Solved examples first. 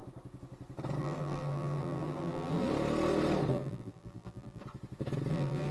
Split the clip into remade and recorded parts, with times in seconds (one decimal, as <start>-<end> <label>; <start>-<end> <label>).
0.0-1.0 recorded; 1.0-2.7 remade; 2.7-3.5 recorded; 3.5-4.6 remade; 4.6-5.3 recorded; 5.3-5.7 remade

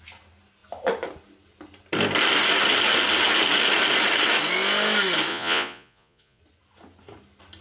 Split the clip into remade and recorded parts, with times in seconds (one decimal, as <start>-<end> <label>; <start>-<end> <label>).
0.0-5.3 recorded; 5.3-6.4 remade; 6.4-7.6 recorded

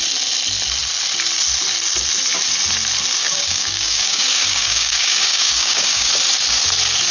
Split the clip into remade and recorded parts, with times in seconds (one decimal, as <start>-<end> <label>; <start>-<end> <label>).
0.0-3.2 recorded; 3.2-6.1 remade; 6.1-7.1 recorded

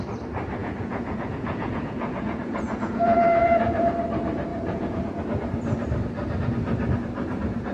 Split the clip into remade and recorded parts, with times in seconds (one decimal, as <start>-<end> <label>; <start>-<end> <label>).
0.0-0.6 recorded; 0.6-3.9 remade; 3.9-4.5 recorded; 4.5-5.2 remade; 5.2-7.7 recorded

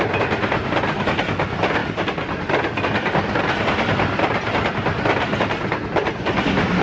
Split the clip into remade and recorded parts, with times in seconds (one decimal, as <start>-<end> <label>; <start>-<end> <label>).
0.0-6.8 recorded

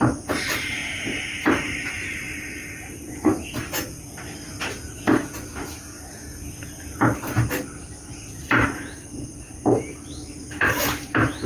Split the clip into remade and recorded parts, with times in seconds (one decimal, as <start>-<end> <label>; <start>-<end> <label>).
0.0-0.8 remade; 0.8-1.5 recorded; 1.5-3.3 remade; 3.3-8.4 recorded; 8.4-11.5 remade